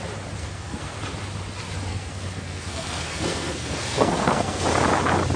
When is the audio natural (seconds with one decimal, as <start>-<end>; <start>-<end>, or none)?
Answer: 0.0-0.4; 1.0-1.9; 4.6-5.4

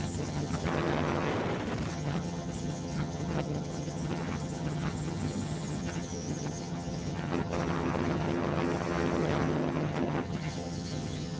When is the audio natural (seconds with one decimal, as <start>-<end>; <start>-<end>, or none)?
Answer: 1.3-1.9

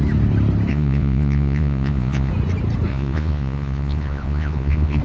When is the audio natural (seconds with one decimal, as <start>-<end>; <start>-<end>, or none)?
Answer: 0.0-0.7; 2.3-2.9

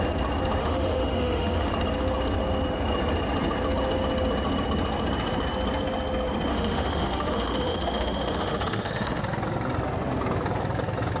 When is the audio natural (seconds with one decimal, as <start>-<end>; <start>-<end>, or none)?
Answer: 0.0-0.6; 1.7-6.5; 9.2-11.2

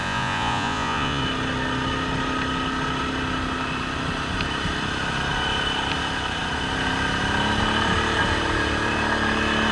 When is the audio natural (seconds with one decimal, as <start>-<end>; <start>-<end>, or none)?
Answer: 1.2-9.7